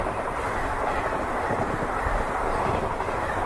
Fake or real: real